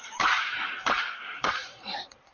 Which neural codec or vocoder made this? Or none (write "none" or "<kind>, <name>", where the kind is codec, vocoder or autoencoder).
vocoder, BigVGAN v2